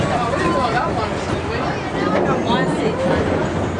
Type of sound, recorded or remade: recorded